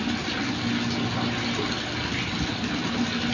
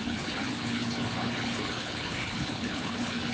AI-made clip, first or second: second